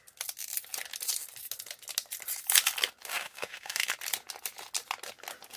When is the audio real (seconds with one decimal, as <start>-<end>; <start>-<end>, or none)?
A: 0.0-3.1; 3.9-5.6